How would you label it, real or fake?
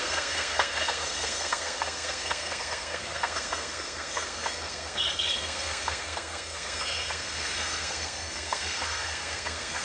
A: fake